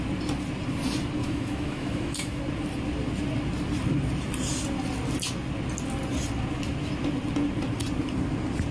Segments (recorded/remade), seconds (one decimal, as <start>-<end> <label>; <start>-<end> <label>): 0.0-1.2 recorded; 1.2-2.4 remade; 2.4-8.7 recorded